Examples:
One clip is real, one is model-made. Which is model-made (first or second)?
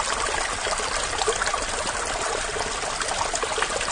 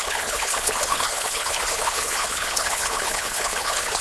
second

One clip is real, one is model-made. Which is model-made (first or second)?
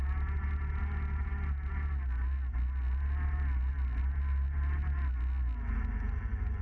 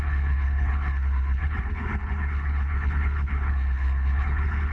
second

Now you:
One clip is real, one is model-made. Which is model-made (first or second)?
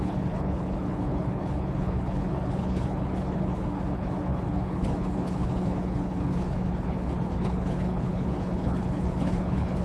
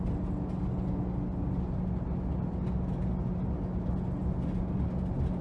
first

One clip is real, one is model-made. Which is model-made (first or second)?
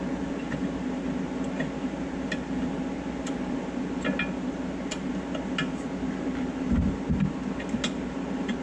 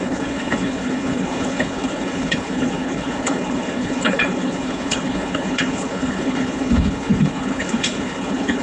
second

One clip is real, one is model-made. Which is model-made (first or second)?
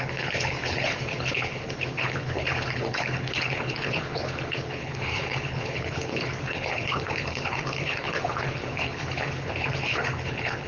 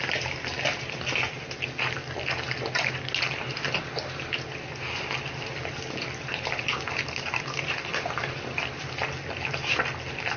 first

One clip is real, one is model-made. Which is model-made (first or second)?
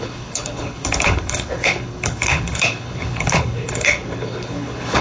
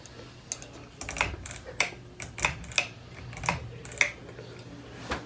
first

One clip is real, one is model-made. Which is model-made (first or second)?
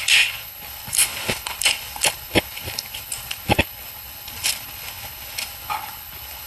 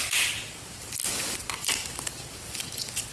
first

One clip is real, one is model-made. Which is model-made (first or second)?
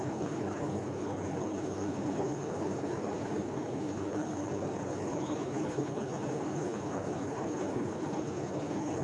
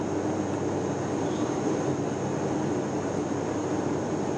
first